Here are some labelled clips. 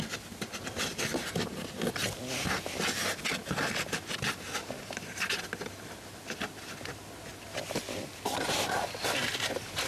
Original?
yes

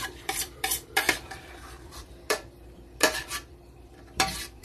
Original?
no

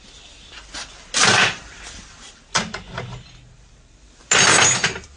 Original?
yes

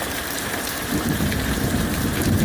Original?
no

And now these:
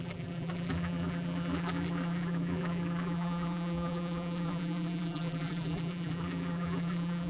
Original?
no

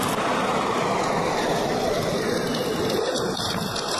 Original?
yes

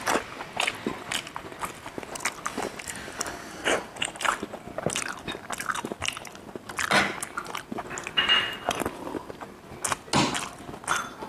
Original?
yes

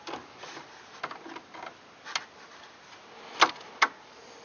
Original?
yes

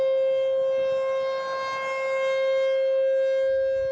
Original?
yes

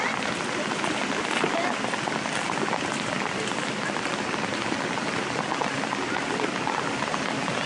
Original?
yes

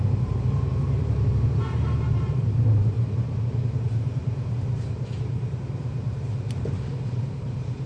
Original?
no